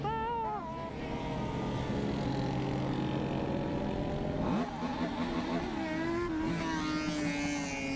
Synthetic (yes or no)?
no